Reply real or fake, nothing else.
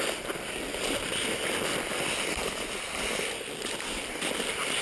real